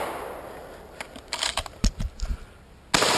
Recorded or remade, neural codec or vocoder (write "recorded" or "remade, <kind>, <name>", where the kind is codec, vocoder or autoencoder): recorded